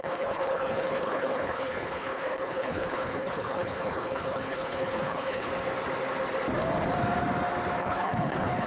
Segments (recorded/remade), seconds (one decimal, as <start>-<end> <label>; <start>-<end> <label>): 0.0-5.5 remade; 5.5-7.8 recorded; 7.8-8.7 remade